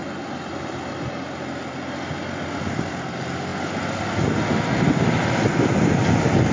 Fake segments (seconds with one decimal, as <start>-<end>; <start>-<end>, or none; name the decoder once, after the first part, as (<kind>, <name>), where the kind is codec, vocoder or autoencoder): none